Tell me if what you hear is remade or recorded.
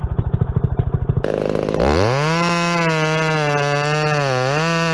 recorded